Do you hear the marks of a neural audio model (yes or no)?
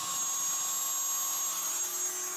no